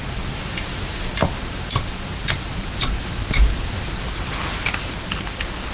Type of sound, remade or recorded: recorded